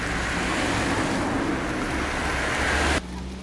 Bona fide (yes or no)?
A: yes